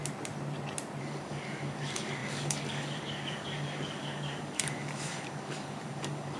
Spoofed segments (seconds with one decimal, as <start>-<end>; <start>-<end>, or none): 1.0-6.4